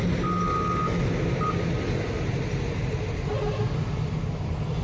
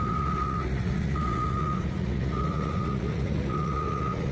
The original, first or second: first